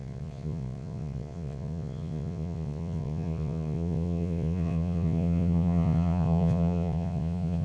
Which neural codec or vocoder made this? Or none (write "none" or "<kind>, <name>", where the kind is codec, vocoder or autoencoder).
vocoder, Vocos